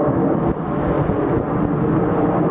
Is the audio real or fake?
real